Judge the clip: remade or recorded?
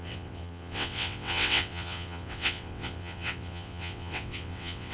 remade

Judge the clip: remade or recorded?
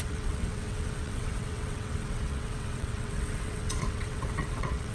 remade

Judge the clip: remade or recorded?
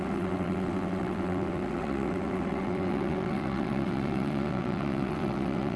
remade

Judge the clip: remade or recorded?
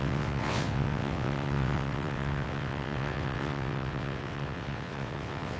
remade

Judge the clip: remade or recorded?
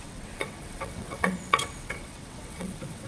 remade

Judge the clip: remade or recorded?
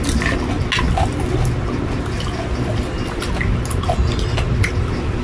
recorded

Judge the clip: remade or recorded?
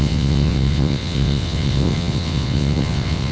remade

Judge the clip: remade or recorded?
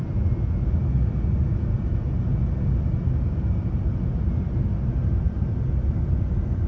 recorded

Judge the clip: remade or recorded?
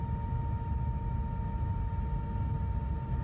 recorded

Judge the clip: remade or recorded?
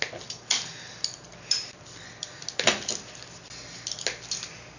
recorded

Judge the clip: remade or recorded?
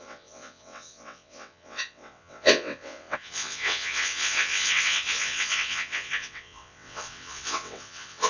remade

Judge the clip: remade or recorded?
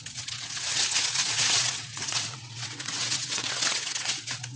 remade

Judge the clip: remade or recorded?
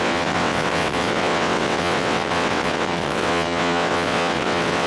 remade